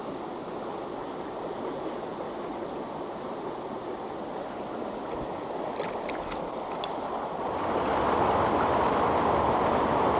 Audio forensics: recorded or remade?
recorded